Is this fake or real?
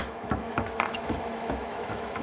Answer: fake